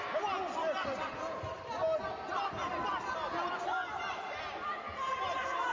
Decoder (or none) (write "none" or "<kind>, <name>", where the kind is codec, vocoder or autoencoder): none